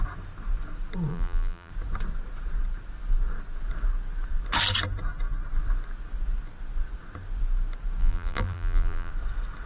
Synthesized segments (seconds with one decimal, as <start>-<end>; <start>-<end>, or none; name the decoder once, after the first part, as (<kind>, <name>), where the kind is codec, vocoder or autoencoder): 1.1-1.7 (vocoder, BigVGAN v2); 8.0-9.1